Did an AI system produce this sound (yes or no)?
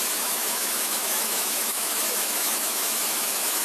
yes